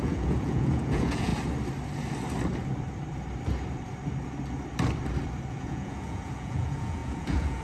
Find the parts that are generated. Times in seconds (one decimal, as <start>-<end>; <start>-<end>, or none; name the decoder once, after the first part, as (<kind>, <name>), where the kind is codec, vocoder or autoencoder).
0.0-1.3 (vocoder, Vocos); 5.5-7.6